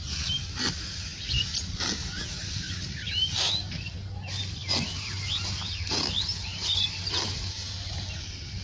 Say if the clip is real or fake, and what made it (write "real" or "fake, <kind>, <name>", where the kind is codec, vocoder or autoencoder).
real